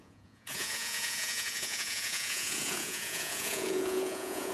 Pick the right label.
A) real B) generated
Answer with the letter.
B